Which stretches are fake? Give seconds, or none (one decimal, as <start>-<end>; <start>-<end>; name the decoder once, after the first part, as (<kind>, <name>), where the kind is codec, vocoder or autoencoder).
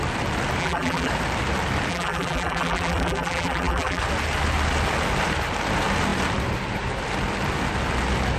0.6-1.1 (vocoder, BigVGAN v2); 1.9-4.0